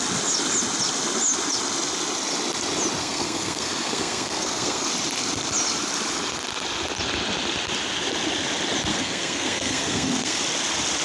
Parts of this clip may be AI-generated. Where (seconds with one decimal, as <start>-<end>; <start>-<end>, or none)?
3.0-4.9; 8.9-10.4